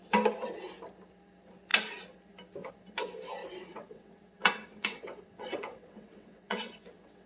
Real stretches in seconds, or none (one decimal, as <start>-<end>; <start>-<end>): 0.0-3.4

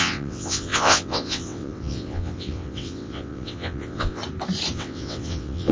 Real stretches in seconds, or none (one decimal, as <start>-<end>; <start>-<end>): 4.2-4.7

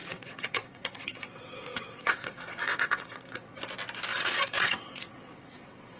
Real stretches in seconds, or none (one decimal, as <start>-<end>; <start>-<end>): 3.6-4.1

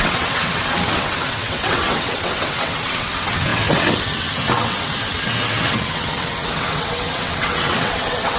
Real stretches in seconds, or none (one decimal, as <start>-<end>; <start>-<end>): none

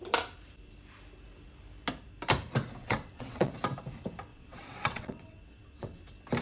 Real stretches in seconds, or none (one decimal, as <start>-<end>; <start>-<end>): 0.0-2.8; 3.5-4.3; 6.0-6.4